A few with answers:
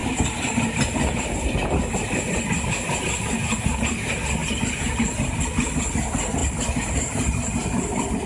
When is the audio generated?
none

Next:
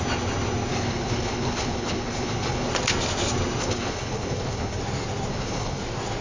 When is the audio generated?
0.7-2.7 (codec, HILCodec); 3.6-4.8; 5.3-5.8

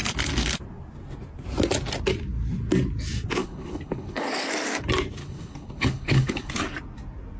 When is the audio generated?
3.4-4.5 (codec, HILCodec); 5.2-6.5

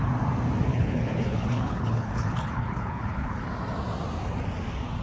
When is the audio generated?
0.7-3.5 (codec, HILCodec)

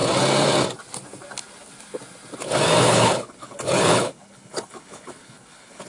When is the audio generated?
2.8-5.9 (codec, HILCodec)

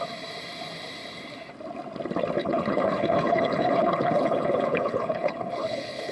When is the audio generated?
2.4-6.1 (codec, HILCodec)